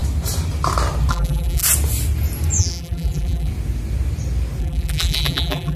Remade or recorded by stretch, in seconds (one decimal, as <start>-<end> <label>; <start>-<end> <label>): 0.0-1.1 recorded; 1.1-1.6 remade; 1.6-2.6 recorded; 2.6-3.5 remade; 3.5-4.6 recorded; 4.6-5.8 remade